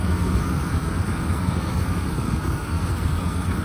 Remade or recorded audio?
remade